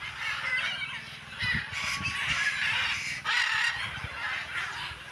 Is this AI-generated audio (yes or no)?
no